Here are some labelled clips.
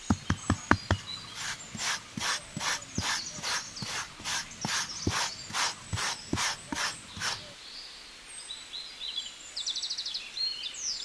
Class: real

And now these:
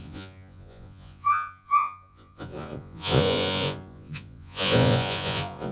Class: fake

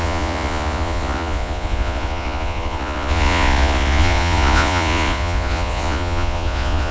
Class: fake